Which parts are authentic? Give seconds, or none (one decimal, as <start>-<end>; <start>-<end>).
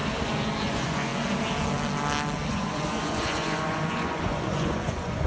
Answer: 0.0-0.6; 1.1-2.5